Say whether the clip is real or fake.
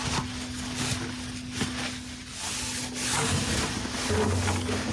real